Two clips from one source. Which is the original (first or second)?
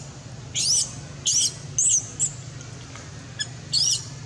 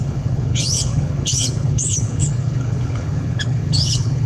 first